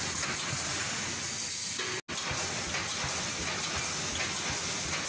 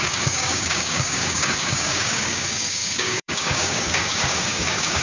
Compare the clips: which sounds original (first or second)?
first